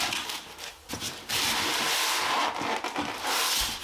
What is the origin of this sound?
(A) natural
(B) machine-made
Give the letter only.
A